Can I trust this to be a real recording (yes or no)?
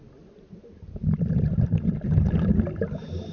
yes